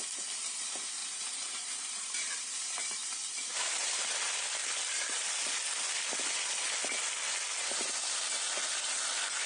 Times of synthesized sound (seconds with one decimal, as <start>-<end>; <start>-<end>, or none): 1.0-4.0